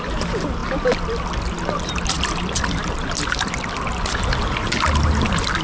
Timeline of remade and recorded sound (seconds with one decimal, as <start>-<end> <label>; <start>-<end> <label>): 0.0-5.6 recorded